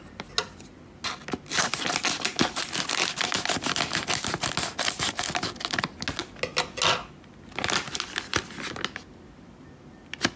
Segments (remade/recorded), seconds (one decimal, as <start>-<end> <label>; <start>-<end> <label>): 0.0-10.4 recorded